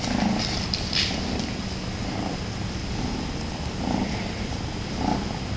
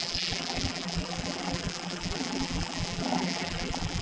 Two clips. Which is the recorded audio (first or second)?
first